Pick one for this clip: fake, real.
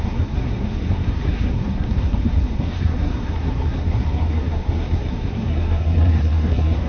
fake